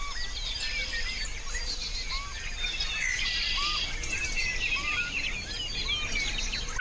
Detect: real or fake real